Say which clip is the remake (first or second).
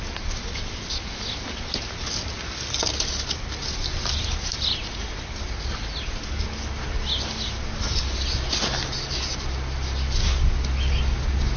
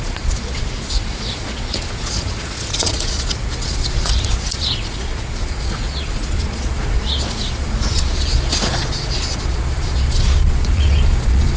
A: second